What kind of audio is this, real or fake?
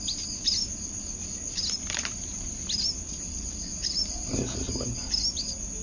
real